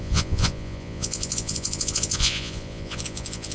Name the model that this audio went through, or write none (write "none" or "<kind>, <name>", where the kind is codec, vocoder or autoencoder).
vocoder, Vocos